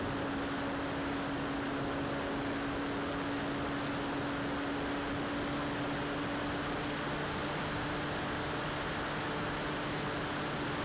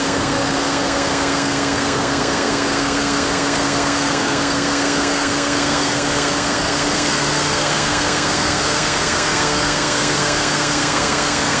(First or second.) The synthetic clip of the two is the second